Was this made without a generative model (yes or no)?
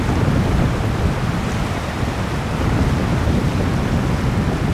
yes